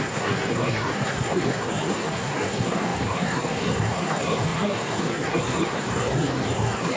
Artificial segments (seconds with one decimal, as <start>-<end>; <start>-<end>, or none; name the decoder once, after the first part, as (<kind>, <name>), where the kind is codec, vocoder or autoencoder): 0.0-7.0 (codec, SNAC)